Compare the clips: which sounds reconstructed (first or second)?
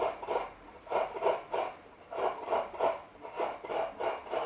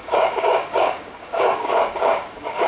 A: second